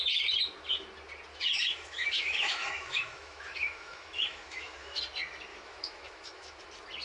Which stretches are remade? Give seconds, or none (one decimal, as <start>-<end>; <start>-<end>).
1.3-5.0; 5.5-6.6